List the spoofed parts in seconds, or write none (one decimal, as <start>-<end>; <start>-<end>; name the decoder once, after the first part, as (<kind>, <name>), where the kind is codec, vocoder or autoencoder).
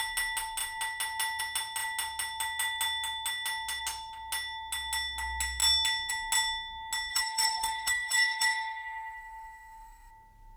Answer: 7.1-10.1 (autoencoder, DAC-VAE)